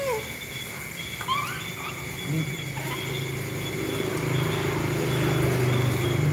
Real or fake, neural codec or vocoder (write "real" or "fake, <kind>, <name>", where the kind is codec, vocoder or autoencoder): real